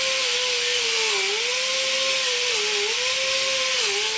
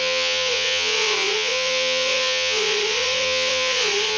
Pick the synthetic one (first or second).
second